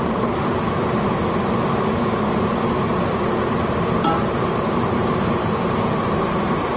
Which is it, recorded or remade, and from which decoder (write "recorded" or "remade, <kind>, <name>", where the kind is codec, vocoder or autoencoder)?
recorded